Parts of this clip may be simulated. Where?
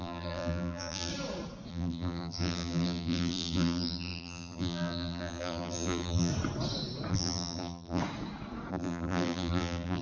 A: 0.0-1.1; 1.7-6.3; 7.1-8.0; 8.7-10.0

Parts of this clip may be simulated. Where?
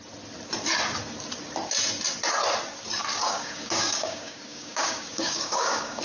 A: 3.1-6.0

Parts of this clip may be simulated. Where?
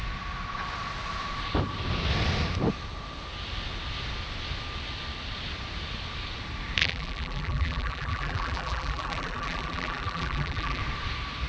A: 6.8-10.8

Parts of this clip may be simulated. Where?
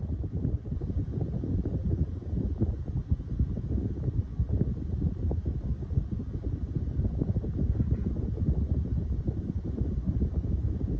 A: none